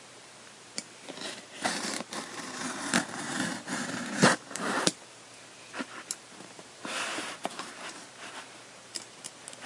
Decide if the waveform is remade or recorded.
remade